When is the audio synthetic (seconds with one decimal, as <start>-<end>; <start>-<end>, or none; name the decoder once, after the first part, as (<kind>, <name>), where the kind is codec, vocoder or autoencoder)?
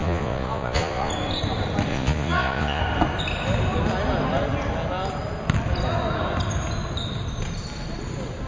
0.0-1.1 (vocoder, Vocos); 1.9-2.8